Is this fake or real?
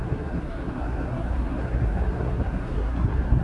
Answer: fake